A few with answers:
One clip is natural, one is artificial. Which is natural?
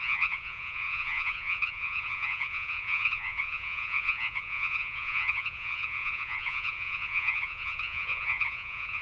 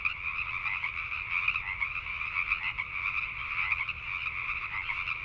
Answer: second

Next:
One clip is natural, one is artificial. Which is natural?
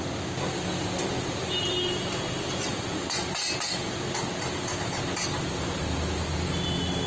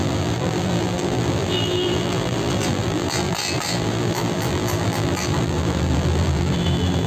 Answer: first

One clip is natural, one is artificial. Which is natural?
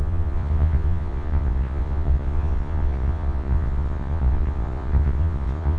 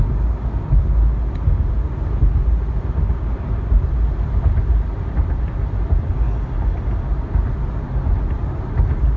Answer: second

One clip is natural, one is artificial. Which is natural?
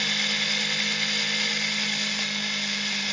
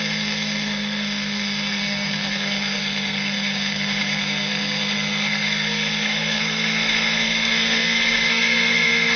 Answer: first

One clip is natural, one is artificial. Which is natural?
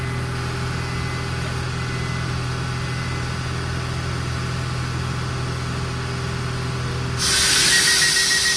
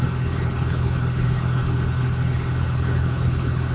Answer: first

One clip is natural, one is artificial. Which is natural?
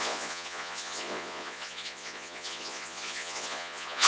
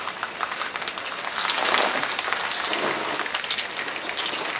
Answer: second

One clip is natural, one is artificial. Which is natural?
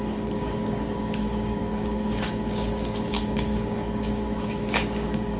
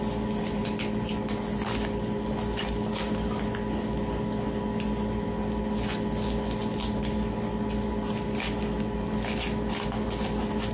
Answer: second